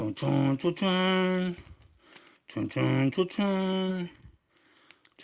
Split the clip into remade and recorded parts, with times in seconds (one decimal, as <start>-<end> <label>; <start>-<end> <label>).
0.0-3.9 recorded; 3.9-4.5 remade; 4.5-5.2 recorded